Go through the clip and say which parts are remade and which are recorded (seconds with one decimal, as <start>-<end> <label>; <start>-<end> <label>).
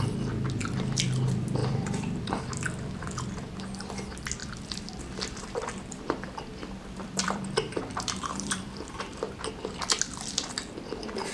0.0-1.6 recorded; 1.6-2.4 remade; 2.4-4.4 recorded; 4.4-9.4 remade; 9.4-11.3 recorded